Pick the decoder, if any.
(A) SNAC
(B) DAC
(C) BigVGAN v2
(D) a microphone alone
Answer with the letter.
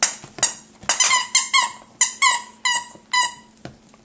D